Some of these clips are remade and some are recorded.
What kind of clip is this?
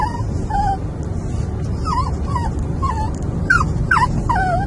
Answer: recorded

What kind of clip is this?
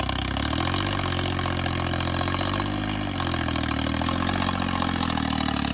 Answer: recorded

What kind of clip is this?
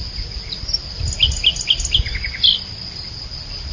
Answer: recorded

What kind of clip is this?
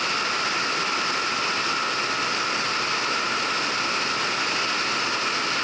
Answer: recorded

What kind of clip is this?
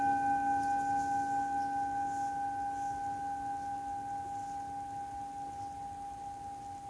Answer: recorded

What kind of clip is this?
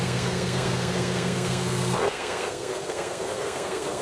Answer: remade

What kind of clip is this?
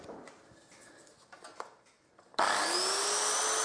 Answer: recorded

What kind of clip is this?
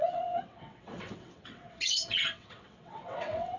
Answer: remade